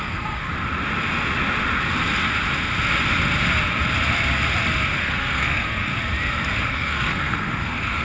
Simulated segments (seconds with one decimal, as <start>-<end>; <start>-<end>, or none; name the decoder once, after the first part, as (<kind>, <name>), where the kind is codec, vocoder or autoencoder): 0.0-0.5 (codec, SNAC); 5.0-5.9; 6.7-8.0